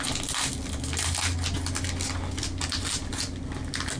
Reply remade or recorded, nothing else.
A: recorded